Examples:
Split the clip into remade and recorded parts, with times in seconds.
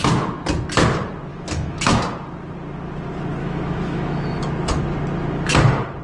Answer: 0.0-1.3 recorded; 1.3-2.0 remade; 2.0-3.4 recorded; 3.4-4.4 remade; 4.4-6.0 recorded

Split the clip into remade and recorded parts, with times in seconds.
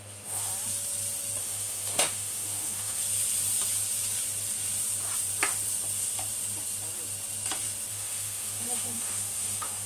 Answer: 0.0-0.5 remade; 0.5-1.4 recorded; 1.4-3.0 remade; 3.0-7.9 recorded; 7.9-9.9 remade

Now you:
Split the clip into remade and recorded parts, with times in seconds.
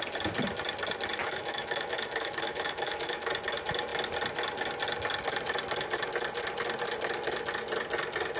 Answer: 0.0-1.2 recorded; 1.2-3.3 remade; 3.3-8.4 recorded